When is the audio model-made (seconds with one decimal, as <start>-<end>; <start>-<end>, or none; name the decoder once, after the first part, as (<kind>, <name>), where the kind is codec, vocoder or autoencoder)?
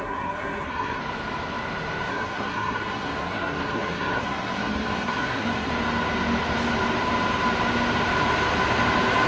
0.0-1.0 (codec, SNAC); 2.1-5.7